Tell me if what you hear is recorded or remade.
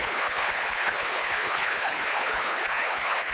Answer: remade